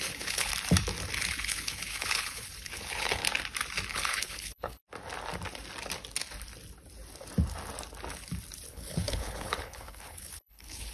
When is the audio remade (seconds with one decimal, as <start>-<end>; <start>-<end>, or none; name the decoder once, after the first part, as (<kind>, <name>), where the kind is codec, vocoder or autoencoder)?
0.0-0.5 (codec, HILCodec); 1.2-3.2; 3.9-4.8; 8.7-10.9